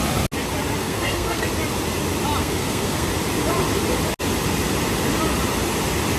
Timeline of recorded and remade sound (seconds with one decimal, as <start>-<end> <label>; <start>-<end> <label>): 0.0-0.8 recorded; 0.8-1.5 remade; 1.5-2.4 recorded; 2.4-3.1 remade; 3.1-6.2 recorded